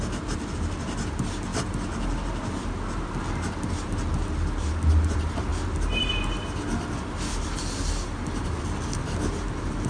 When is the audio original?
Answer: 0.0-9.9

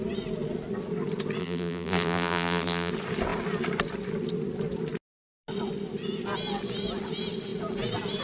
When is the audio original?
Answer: 0.0-1.4; 2.9-8.2

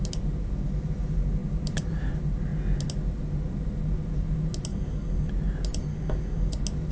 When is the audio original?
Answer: 0.0-4.7; 5.3-5.9; 6.5-6.9

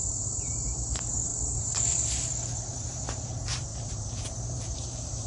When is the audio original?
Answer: none

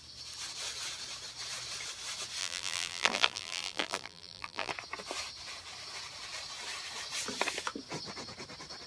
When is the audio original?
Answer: 0.0-2.4; 4.7-8.9